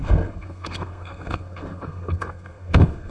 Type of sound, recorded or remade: remade